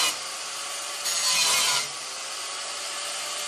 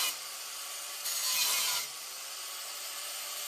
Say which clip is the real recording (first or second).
first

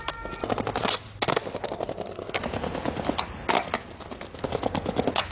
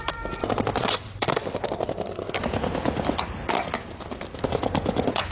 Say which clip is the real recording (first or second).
first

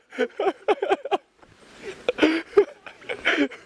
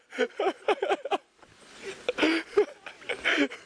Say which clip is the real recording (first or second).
second